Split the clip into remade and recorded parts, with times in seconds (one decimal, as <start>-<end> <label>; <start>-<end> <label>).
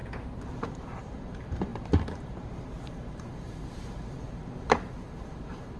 0.0-0.5 recorded; 0.5-5.8 remade